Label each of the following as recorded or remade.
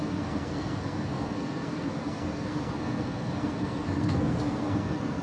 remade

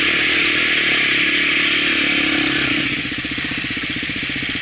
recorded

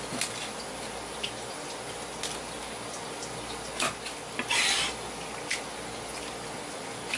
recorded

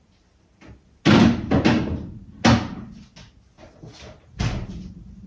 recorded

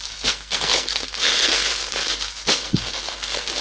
remade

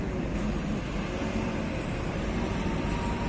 recorded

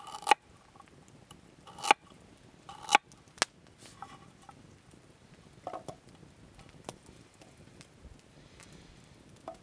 recorded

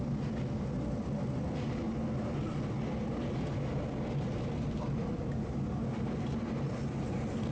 recorded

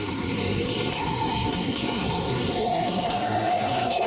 remade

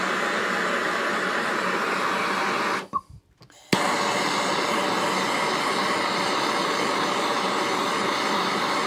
recorded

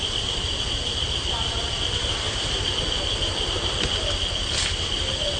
recorded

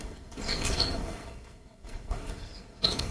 remade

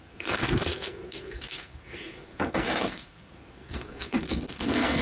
remade